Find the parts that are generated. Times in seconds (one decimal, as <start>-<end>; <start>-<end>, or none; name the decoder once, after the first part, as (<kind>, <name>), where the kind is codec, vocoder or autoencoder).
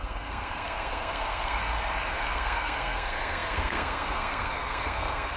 0.0-1.6 (codec, SNAC); 2.1-5.4